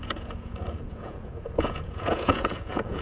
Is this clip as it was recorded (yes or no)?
no